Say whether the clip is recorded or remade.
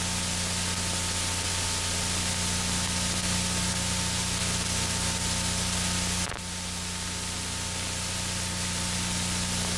recorded